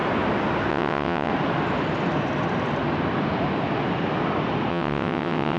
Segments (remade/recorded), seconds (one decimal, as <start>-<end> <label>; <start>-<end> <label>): 0.0-0.7 recorded; 0.7-1.3 remade; 1.3-4.7 recorded; 4.7-5.6 remade